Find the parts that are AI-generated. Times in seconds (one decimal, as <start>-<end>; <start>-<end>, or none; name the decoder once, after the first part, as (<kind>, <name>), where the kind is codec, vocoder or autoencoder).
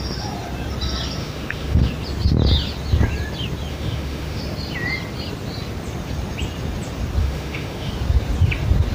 1.2-1.9 (autoencoder, DAC-VAE); 3.7-4.4; 7.2-7.9